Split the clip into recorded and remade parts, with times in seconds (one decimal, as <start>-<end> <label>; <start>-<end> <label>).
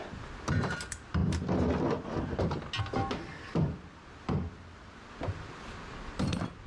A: 0.0-6.7 recorded